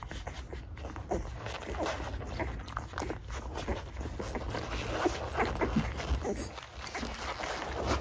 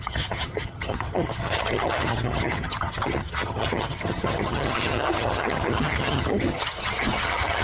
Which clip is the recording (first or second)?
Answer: first